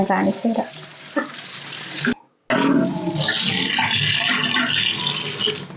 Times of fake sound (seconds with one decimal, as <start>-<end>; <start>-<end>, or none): none